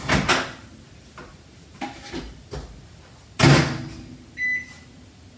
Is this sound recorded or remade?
recorded